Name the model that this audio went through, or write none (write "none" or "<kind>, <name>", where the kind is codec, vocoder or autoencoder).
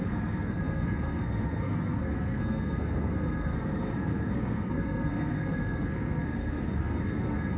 codec, SNAC